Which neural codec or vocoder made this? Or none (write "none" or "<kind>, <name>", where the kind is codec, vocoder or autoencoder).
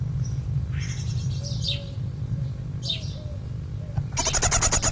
none